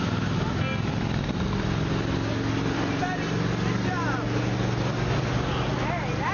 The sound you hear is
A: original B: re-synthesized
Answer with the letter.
A